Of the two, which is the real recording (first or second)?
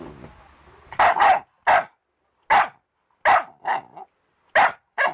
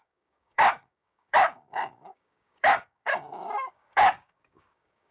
first